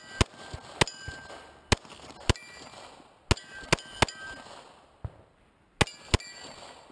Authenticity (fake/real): real